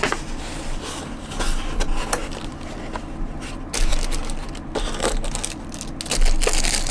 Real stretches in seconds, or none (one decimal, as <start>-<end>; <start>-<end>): 0.0-6.9